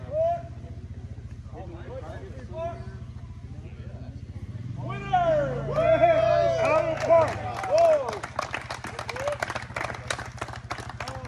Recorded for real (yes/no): yes